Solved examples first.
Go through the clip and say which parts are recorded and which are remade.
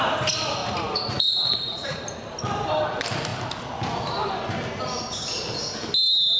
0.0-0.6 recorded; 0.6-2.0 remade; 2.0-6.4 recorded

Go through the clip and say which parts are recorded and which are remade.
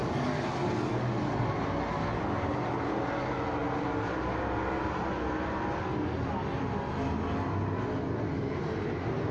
0.0-9.3 recorded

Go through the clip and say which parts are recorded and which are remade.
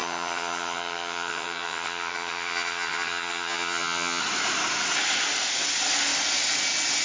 0.0-4.2 remade; 4.2-7.0 recorded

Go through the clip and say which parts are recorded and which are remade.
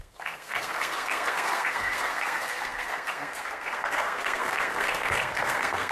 0.0-5.9 remade